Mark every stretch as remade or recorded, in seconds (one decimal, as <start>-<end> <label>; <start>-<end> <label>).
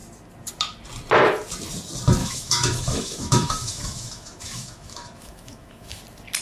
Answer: 0.0-2.2 recorded; 2.2-6.0 remade; 6.0-6.4 recorded